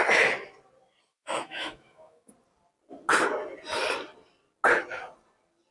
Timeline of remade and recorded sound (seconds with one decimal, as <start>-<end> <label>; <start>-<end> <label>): 0.0-1.1 recorded; 1.1-2.3 remade; 2.3-5.7 recorded